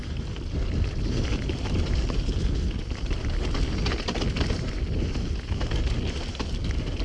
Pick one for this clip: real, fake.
real